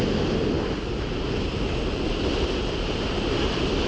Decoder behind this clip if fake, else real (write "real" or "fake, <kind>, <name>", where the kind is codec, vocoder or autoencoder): real